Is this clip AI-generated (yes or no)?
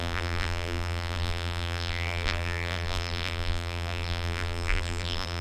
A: yes